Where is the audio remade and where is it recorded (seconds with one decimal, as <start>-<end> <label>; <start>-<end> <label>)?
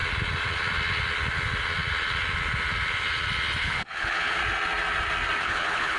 0.0-3.6 recorded; 3.6-4.4 remade; 4.4-5.4 recorded; 5.4-6.0 remade